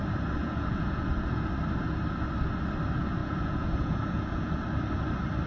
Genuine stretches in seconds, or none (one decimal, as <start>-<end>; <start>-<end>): 0.0-0.4; 1.5-3.2; 4.6-5.5